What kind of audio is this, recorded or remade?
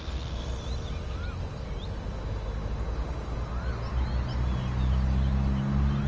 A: recorded